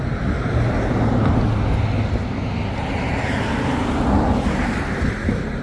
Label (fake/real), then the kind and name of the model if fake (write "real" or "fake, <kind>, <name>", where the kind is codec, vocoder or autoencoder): real